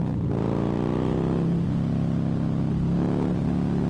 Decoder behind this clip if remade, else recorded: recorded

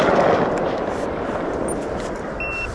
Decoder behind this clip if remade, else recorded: recorded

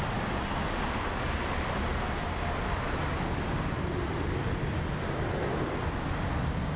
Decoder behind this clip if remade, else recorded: recorded